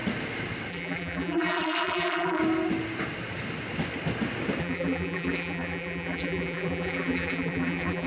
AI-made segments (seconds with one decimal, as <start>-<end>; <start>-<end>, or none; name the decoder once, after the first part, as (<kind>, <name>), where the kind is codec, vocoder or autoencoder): 0.7-2.4 (vocoder, BigVGAN v2); 4.6-8.1